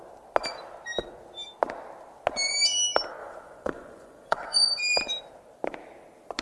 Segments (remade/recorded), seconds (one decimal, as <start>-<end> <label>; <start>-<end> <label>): 0.0-3.2 recorded; 3.2-4.8 remade; 4.8-6.4 recorded